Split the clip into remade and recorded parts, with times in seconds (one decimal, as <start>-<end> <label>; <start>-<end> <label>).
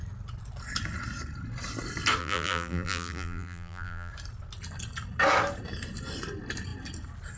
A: 0.0-2.2 recorded; 2.2-4.1 remade; 4.1-7.4 recorded